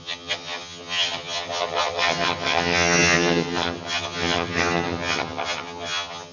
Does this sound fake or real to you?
fake